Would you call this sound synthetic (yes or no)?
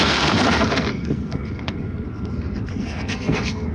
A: yes